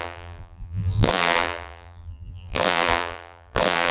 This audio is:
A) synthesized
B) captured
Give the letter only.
A